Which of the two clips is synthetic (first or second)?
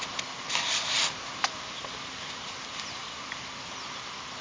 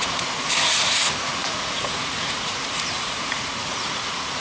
second